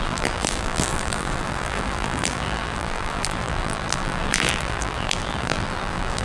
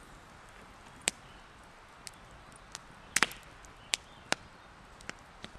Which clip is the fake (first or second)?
first